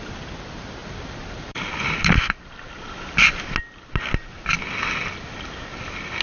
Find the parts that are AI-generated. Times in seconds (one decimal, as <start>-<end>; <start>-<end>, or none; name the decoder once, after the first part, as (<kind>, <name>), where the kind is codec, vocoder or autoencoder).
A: none